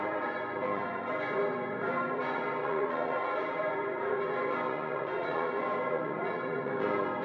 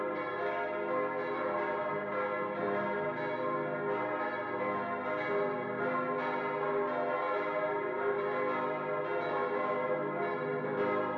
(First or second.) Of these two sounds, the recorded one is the second